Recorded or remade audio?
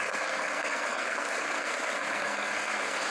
remade